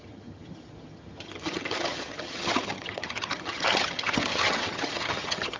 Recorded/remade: remade